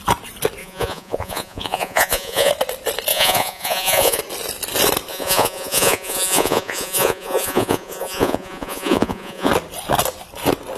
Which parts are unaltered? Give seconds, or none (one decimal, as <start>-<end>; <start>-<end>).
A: 0.0-0.6; 2.5-3.1; 4.2-5.1; 9.5-10.8